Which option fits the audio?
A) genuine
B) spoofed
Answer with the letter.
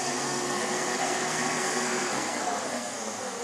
B